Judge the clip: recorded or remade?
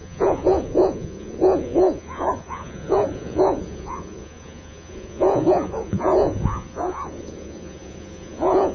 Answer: remade